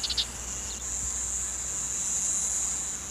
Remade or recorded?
recorded